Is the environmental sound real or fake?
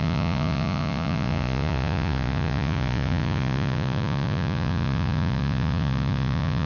fake